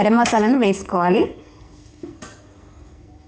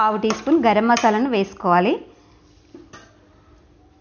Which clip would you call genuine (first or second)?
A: second